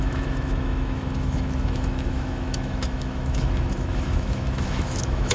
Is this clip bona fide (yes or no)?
no